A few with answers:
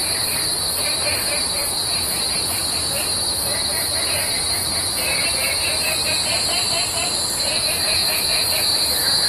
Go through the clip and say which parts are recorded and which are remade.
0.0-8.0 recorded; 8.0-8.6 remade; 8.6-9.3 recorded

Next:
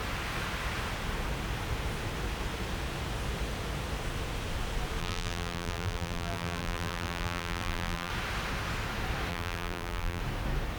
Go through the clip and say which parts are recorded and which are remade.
0.0-5.0 recorded; 5.0-8.1 remade; 8.1-9.3 recorded; 9.3-10.2 remade; 10.2-10.8 recorded

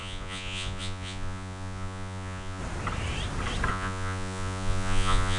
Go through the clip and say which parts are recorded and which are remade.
0.0-2.6 remade; 2.6-3.7 recorded; 3.7-5.4 remade